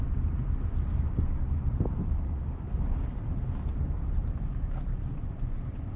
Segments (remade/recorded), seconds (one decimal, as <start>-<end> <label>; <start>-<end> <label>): 0.0-5.1 recorded; 5.1-6.0 remade